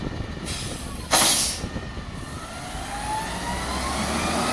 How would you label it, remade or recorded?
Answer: recorded